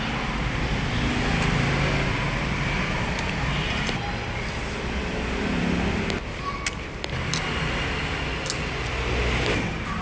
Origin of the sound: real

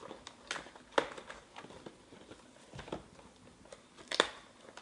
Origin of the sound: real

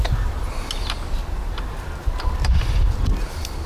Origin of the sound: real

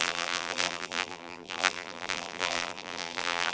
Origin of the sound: fake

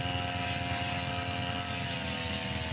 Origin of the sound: real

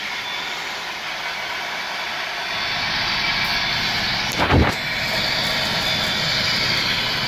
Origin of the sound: real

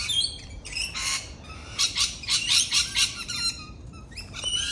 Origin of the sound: fake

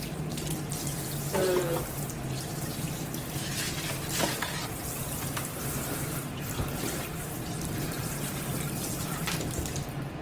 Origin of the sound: fake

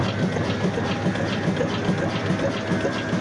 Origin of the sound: real